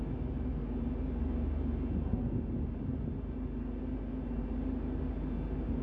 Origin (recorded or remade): recorded